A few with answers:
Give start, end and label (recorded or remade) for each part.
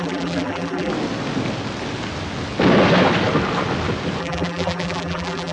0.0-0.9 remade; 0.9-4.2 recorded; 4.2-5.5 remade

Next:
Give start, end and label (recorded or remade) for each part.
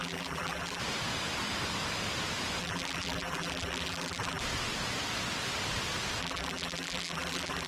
0.0-0.8 remade; 0.8-2.6 recorded; 2.6-4.4 remade; 4.4-6.2 recorded; 6.2-7.7 remade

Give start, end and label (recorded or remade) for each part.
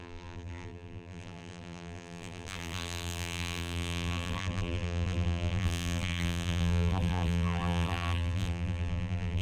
0.0-9.4 remade